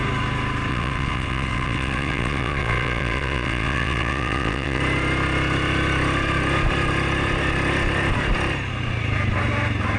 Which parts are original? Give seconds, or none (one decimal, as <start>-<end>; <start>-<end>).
0.0-0.7; 4.8-10.0